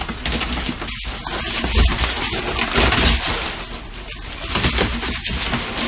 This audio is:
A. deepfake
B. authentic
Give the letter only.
B